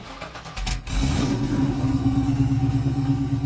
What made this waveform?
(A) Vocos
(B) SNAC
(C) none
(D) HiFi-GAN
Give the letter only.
B